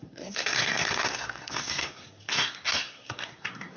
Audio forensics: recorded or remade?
remade